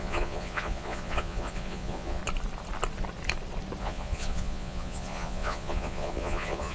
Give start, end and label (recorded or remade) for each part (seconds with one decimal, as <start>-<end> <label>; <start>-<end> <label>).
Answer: 0.0-2.2 remade; 2.2-3.8 recorded; 3.8-6.7 remade